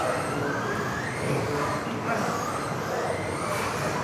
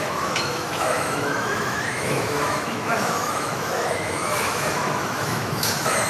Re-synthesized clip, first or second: second